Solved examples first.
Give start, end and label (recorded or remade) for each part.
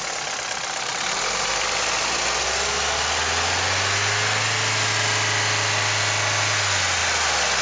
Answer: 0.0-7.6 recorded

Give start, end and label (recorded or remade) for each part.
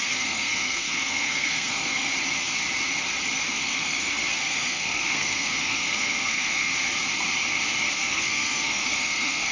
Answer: 0.0-2.1 remade; 2.1-3.5 recorded; 3.5-6.7 remade; 6.7-8.0 recorded; 8.0-9.5 remade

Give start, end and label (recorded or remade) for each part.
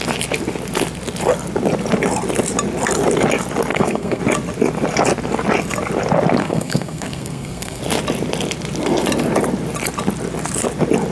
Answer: 0.0-3.7 recorded; 3.7-4.2 remade; 4.2-6.4 recorded; 6.4-7.8 remade; 7.8-11.1 recorded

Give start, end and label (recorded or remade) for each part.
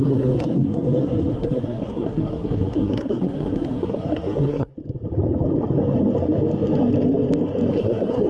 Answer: 0.0-4.7 remade; 4.7-7.7 recorded; 7.7-8.3 remade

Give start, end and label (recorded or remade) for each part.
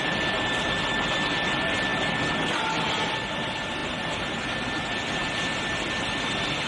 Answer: 0.0-6.7 recorded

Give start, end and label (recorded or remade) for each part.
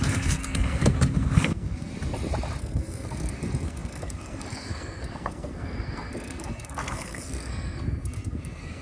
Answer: 0.0-1.9 remade; 1.9-2.6 recorded; 2.6-8.8 remade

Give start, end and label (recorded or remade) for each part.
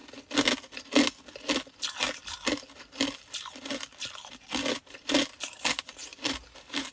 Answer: 0.0-6.9 recorded